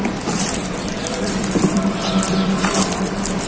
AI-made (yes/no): yes